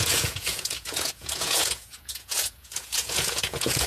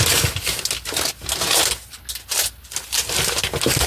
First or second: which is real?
second